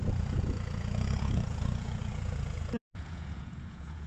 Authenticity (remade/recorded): remade